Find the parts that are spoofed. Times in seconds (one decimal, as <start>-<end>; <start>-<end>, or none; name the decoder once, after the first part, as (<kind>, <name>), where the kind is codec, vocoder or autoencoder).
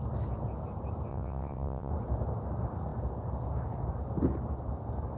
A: 1.1-1.9 (vocoder, WaveNeXt)